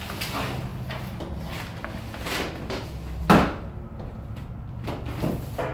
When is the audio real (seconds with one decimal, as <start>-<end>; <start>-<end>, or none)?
0.0-5.7